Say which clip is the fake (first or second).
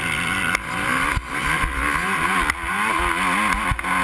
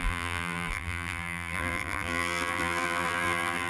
second